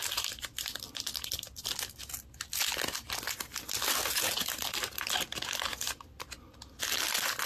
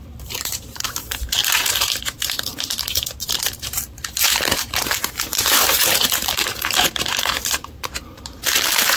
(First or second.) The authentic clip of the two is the first